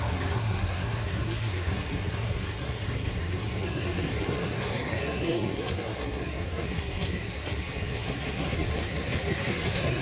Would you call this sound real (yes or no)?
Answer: no